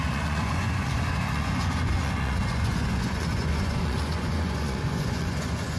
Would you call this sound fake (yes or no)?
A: yes